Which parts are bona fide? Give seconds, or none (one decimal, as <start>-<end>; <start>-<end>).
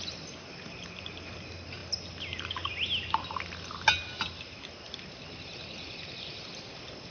0.0-7.1